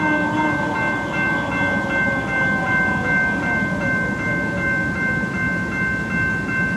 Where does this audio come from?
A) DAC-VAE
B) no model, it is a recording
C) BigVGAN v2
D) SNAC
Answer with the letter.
B